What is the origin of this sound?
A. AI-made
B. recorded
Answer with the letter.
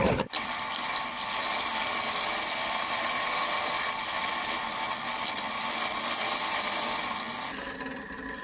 B